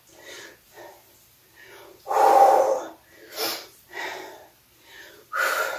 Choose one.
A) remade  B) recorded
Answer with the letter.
B